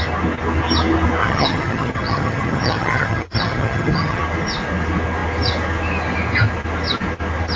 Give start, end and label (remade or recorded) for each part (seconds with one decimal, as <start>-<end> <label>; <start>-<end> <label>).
0.0-1.2 recorded; 1.2-4.2 remade; 4.2-7.6 recorded